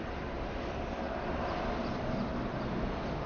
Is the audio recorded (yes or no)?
no